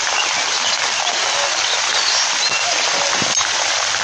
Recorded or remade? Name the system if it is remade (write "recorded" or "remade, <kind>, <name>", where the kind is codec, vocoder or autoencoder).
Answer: recorded